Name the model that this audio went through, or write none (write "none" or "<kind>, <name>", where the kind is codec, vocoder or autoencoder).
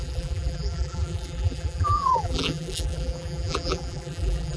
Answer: vocoder, BigVGAN v2